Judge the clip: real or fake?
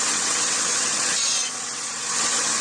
fake